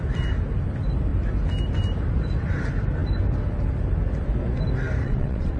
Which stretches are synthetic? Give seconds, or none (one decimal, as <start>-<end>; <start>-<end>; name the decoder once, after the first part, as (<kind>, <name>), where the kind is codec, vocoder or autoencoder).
5.0-5.6 (vocoder, WaveNeXt)